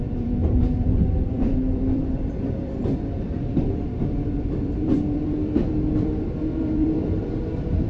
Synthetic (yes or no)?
yes